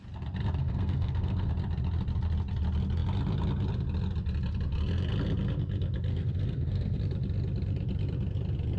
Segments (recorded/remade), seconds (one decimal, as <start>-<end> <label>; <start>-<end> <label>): 0.0-0.6 recorded; 0.6-1.5 remade; 1.5-6.1 recorded; 6.1-7.0 remade; 7.0-8.8 recorded